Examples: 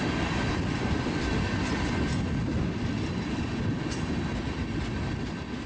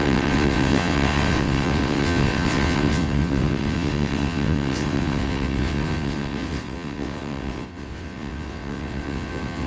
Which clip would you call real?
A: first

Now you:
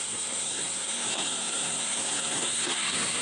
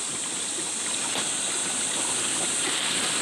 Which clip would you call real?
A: second